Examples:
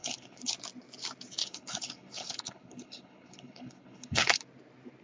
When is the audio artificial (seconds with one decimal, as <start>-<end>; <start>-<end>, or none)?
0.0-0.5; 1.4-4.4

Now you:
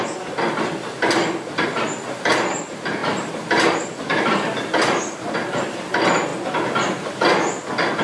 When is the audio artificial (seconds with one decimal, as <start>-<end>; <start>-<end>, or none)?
none

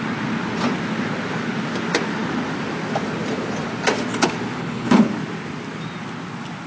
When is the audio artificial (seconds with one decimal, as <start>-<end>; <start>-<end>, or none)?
4.6-5.1

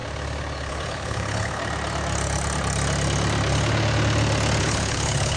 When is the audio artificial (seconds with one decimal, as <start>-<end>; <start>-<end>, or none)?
0.7-1.6; 4.6-5.4

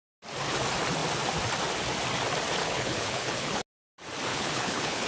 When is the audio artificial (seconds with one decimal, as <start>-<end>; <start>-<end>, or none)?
2.6-3.6; 4.3-5.1

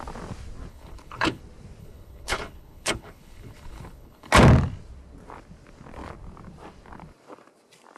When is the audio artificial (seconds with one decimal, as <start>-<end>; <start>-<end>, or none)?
0.7-1.4; 1.8-4.3

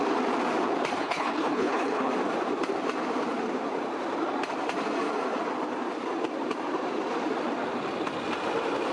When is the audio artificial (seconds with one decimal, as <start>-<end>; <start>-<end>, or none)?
1.0-2.1